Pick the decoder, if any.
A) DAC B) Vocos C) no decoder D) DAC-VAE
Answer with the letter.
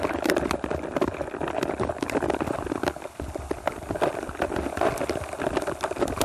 C